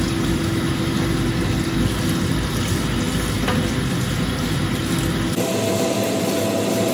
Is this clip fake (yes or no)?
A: no